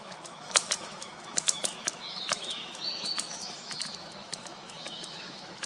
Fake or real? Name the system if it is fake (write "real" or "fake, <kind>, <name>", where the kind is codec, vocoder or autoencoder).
fake, autoencoder, DAC-VAE